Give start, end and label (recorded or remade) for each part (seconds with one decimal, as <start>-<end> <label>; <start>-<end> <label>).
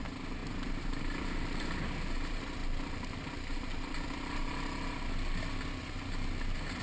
0.0-6.8 recorded